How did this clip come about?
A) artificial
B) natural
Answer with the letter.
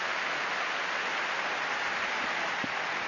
B